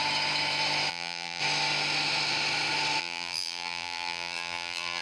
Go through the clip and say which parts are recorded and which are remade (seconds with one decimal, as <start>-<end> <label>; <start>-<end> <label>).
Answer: 0.0-0.9 recorded; 0.9-1.4 remade; 1.4-3.0 recorded; 3.0-5.0 remade